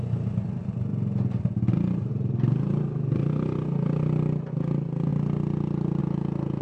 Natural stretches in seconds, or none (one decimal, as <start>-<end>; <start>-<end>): 0.0-2.1; 4.5-6.6